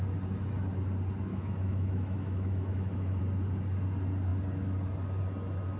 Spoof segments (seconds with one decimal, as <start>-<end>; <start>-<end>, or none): 1.3-3.2